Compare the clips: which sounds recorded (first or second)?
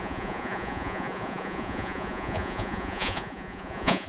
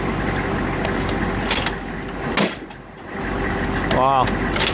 second